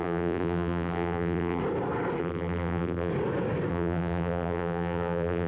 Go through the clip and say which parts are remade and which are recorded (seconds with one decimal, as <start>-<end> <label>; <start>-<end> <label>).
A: 0.0-1.6 remade; 1.6-2.2 recorded; 2.2-3.1 remade; 3.1-3.7 recorded; 3.7-5.5 remade